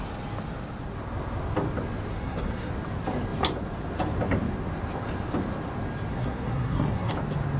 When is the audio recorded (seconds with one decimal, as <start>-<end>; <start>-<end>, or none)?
0.0-2.1; 2.7-6.1; 7.1-7.6